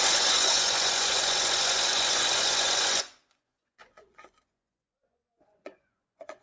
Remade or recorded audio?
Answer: remade